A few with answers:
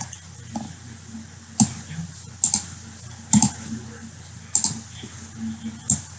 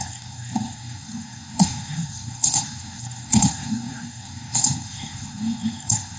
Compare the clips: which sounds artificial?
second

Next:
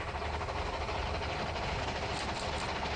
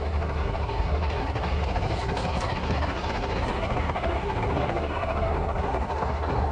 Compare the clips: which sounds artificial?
second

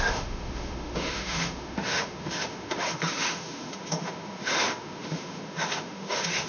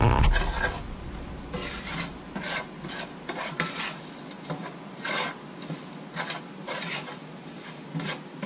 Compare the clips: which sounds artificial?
first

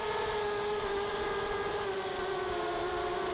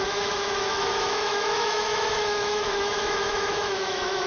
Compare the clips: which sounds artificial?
second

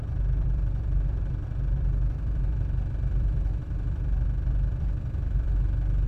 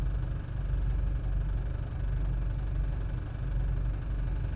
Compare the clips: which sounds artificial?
first